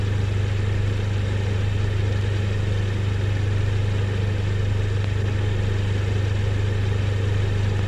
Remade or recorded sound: recorded